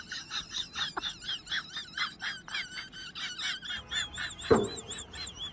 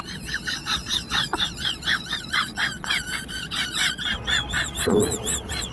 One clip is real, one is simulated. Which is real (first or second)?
first